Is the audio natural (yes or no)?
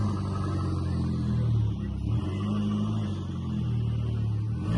yes